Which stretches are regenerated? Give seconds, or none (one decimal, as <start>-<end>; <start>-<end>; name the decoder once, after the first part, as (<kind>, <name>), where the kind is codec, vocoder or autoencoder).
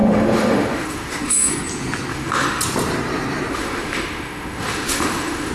0.0-1.5 (autoencoder, DAC-VAE); 2.1-2.6; 3.5-5.5